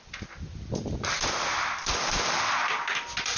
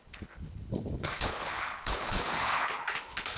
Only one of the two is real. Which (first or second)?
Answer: first